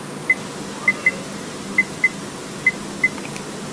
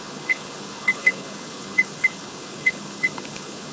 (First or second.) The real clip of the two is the first